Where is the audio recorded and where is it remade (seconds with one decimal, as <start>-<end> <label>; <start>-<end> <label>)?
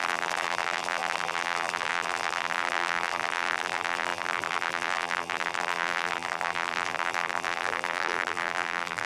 0.0-9.1 remade